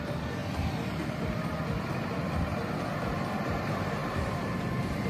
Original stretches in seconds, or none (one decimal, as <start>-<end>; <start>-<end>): 0.4-2.1; 2.5-3.4